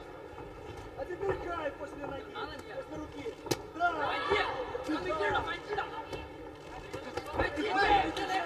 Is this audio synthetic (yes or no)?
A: no